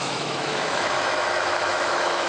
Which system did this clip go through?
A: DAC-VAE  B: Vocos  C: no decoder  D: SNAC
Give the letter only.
A